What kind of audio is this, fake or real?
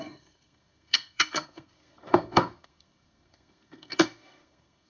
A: fake